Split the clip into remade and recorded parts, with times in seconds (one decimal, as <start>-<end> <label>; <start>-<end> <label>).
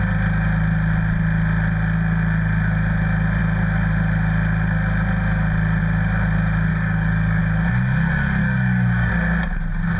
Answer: 0.0-6.7 recorded; 6.7-7.4 remade; 7.4-8.4 recorded; 8.4-9.1 remade; 9.1-10.0 recorded